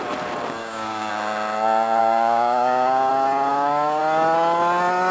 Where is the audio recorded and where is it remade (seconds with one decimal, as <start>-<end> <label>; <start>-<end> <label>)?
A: 0.0-0.6 recorded; 0.6-1.1 remade; 1.1-2.0 recorded; 2.0-3.1 remade; 3.1-3.5 recorded; 3.5-4.0 remade; 4.0-5.1 recorded